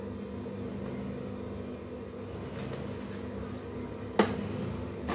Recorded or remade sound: recorded